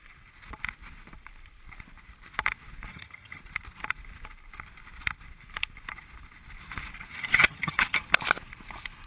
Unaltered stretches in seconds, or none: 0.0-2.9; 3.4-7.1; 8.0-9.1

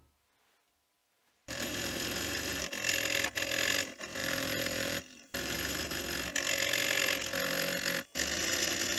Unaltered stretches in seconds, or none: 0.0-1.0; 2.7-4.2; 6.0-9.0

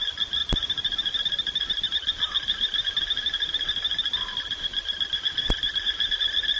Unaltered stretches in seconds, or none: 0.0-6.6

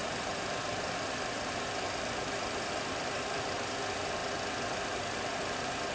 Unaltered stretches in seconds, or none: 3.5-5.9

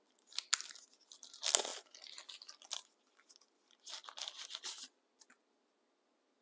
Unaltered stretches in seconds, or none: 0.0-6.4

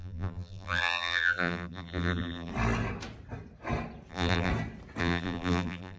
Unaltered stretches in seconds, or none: 2.5-4.1; 4.5-5.0